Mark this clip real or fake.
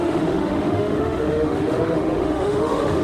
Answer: fake